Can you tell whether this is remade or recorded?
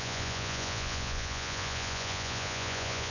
remade